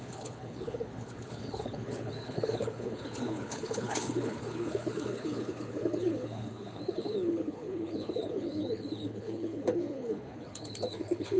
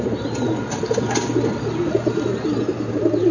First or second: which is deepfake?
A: first